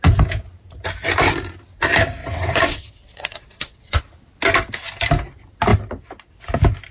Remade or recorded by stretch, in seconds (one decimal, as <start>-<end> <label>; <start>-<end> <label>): 0.0-2.2 recorded; 2.2-4.0 remade; 4.0-6.9 recorded